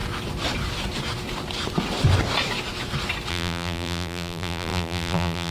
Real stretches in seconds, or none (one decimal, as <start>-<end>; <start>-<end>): 0.0-3.3